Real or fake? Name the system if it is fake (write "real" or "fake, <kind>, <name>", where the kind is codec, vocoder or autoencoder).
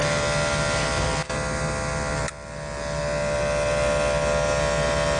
real